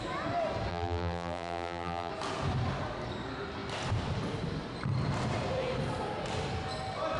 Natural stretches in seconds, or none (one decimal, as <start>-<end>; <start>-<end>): 0.0-0.7; 2.1-7.2